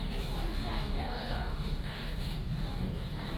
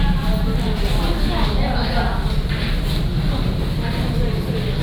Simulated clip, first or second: first